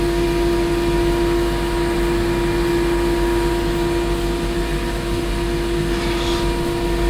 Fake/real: real